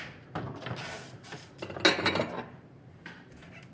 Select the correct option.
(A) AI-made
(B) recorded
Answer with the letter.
B